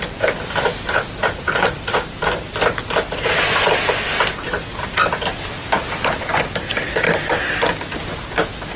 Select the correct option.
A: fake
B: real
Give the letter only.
B